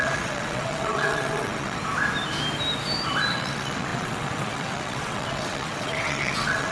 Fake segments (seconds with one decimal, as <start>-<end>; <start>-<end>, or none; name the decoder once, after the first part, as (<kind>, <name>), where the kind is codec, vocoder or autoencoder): 0.0-1.8 (vocoder, WaveNeXt); 3.3-6.7